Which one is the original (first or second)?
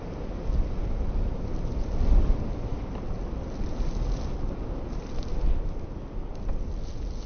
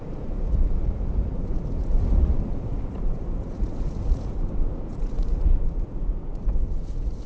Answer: first